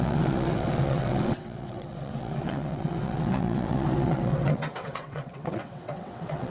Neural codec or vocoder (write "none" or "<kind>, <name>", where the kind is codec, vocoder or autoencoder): vocoder, WaveNeXt